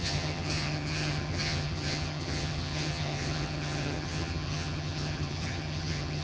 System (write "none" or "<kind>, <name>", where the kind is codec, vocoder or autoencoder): vocoder, HiFi-GAN